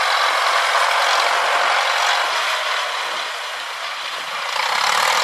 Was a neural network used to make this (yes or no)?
no